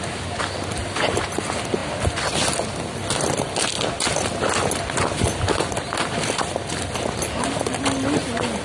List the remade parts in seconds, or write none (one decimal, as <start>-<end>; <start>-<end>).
none